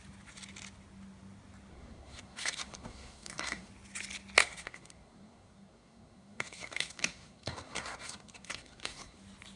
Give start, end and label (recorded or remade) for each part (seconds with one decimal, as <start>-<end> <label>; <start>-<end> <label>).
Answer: 0.0-1.7 recorded; 1.7-3.7 remade; 3.7-4.4 recorded; 4.4-9.2 remade; 9.2-9.6 recorded